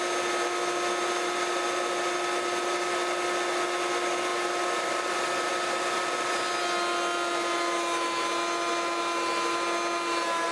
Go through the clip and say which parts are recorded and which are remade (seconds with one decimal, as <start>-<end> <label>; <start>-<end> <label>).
0.0-10.5 recorded